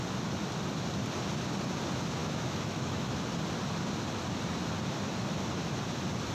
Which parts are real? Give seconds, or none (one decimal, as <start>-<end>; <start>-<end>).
0.0-2.2; 3.2-6.3